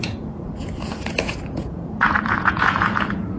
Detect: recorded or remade remade